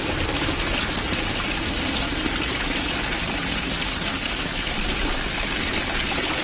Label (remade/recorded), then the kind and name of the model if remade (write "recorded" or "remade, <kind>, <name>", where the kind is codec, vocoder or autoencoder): recorded